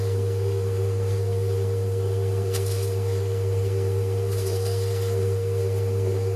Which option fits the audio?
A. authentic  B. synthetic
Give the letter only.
B